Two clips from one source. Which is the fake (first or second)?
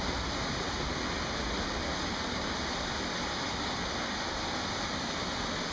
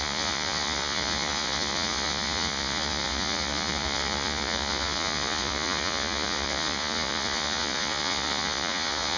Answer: second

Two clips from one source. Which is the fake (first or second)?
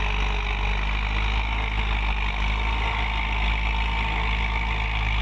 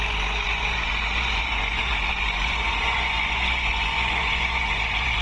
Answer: second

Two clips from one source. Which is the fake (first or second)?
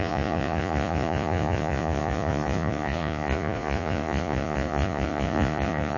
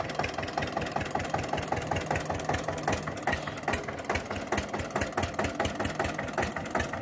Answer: first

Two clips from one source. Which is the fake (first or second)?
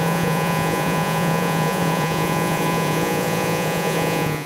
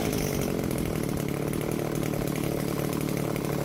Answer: first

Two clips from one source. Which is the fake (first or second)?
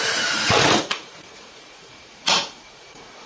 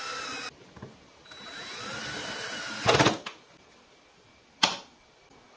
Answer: first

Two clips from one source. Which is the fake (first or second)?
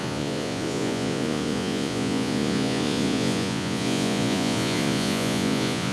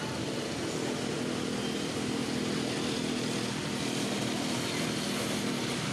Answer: first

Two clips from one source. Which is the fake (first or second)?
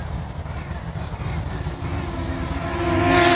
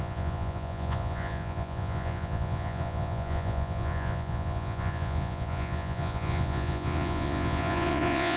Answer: second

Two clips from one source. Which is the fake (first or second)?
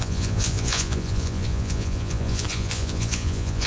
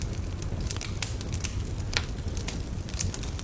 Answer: first